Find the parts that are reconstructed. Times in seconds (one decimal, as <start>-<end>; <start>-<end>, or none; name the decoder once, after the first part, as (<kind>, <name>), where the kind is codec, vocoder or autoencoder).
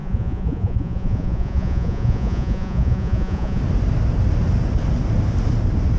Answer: 0.0-3.6 (vocoder, Vocos)